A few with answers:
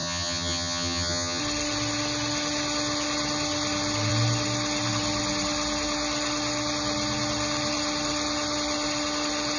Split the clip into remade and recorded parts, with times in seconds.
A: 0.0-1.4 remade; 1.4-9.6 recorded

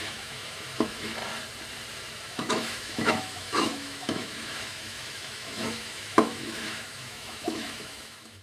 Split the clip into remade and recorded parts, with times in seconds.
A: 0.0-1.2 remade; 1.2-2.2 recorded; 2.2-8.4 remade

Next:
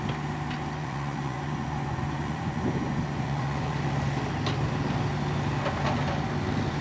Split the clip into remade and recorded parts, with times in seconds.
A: 0.0-0.8 recorded; 0.8-3.8 remade; 3.8-6.8 recorded

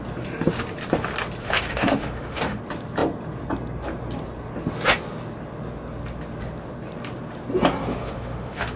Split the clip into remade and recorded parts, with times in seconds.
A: 0.0-1.4 recorded; 1.4-2.6 remade; 2.6-7.9 recorded; 7.9-8.8 remade

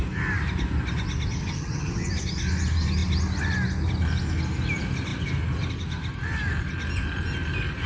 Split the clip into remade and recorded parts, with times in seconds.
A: 0.0-1.4 recorded; 1.4-2.1 remade; 2.1-7.9 recorded